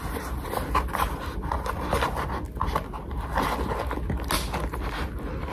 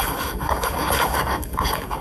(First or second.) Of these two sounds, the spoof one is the second